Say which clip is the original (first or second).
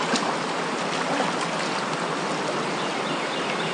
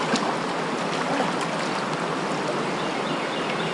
second